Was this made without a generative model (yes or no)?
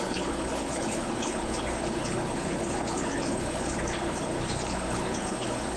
no